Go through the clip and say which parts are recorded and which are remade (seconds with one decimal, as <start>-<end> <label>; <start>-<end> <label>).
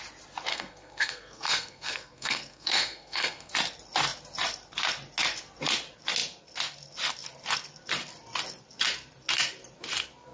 0.0-0.5 recorded; 0.5-3.5 remade; 3.5-10.3 recorded